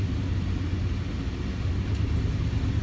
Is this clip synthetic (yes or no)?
no